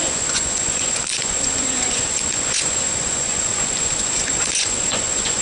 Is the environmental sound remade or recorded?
remade